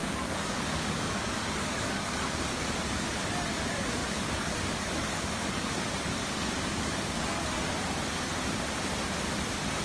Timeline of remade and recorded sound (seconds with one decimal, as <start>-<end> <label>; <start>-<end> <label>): 0.0-2.7 remade; 2.7-4.0 recorded; 4.0-7.7 remade; 7.7-9.8 recorded

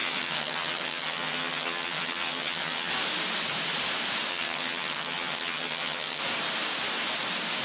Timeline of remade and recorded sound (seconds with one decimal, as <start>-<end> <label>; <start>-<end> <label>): 0.0-2.9 remade; 2.9-4.3 recorded; 4.3-6.2 remade; 6.2-7.6 recorded

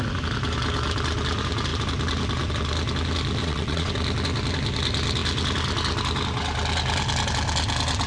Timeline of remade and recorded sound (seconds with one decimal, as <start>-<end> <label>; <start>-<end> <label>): 0.0-3.4 recorded; 3.4-3.9 remade; 3.9-8.1 recorded

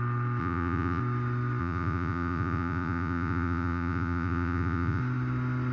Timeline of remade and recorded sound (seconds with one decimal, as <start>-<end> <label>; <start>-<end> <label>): 0.0-0.4 recorded; 0.4-1.0 remade; 1.0-1.6 recorded; 1.6-5.0 remade; 5.0-5.7 recorded